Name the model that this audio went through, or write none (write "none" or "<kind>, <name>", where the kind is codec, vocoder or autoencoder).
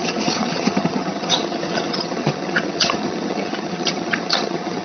vocoder, HiFi-GAN